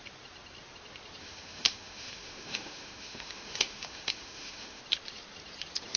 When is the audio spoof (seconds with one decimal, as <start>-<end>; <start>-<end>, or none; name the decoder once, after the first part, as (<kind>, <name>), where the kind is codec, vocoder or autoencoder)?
1.2-4.8 (autoencoder, DAC-VAE)